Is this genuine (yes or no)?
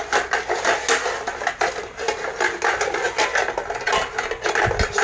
yes